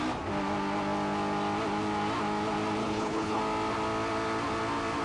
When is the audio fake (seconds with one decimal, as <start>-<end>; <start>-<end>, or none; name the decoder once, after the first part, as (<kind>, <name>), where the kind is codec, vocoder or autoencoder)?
2.8-3.4 (codec, HILCodec)